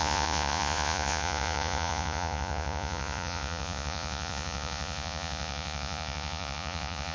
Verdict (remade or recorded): remade